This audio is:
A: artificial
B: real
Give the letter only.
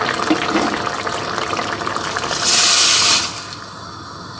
B